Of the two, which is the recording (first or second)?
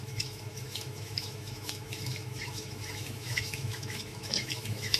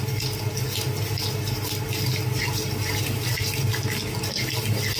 second